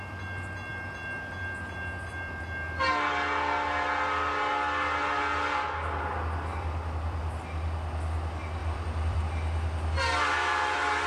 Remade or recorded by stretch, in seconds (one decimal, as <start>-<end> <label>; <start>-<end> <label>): 0.0-6.5 recorded; 6.5-7.2 remade; 7.2-8.6 recorded; 8.6-9.2 remade; 9.2-11.1 recorded